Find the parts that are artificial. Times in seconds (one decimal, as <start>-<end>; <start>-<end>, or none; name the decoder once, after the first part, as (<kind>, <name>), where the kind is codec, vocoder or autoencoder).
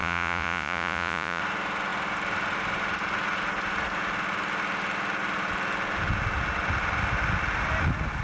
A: 0.0-1.4 (vocoder, Vocos)